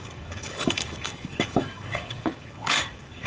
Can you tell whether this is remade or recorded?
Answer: remade